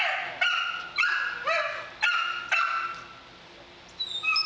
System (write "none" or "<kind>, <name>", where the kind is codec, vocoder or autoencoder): none